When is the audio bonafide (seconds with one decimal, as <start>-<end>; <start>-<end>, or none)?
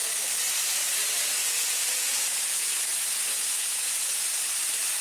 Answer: 0.0-1.4; 4.4-5.0